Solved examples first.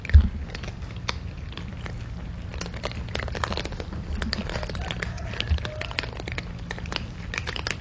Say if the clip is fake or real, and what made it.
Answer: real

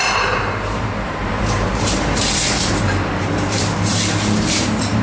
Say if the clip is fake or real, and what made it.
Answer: fake, vocoder, BigVGAN v2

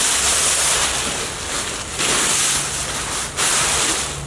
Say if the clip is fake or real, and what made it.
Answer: real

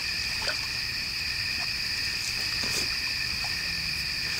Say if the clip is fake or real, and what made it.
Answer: fake, vocoder, BigVGAN v2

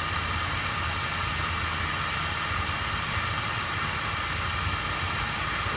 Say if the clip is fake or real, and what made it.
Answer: real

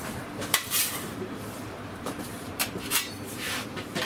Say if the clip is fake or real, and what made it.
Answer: fake, vocoder, BigVGAN v2